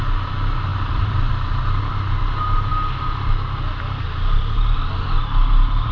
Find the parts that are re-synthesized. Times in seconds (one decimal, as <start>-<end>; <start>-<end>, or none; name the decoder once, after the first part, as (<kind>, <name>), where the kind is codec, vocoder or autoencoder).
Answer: 0.7-1.3 (vocoder, BigVGAN v2)